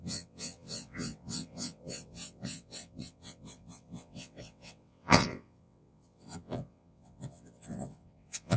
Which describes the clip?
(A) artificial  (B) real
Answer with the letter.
A